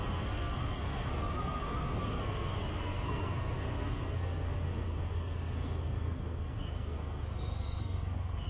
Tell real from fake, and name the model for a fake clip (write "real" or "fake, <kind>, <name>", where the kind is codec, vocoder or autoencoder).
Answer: fake, codec, SNAC